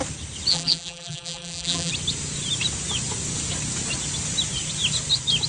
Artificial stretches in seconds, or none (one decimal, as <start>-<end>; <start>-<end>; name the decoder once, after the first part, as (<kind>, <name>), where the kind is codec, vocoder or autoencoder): 0.5-1.9 (vocoder, BigVGAN v2)